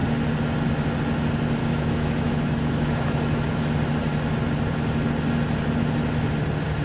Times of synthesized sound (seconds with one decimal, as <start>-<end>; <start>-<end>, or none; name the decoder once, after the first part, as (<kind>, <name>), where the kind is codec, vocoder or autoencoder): 1.6-3.5 (autoencoder, DAC-VAE)